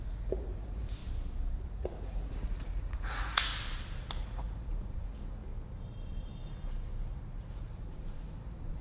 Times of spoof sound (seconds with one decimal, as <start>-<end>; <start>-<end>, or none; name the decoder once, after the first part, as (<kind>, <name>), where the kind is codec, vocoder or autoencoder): 0.0-1.0 (vocoder, Vocos); 1.7-3.5; 4.2-5.4; 7.5-8.8